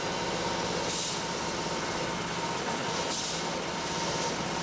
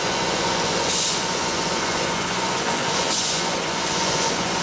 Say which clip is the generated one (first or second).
second